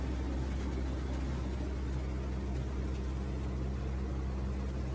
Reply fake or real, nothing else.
real